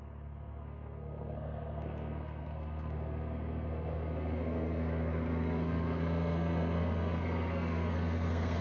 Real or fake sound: fake